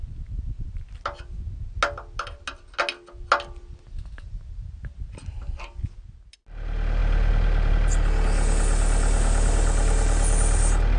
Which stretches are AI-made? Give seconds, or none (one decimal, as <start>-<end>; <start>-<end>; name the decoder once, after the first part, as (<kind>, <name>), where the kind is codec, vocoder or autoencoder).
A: none